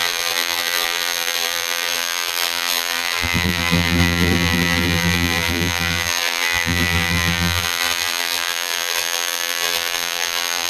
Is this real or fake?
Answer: fake